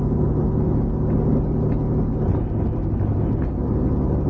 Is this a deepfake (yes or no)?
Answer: no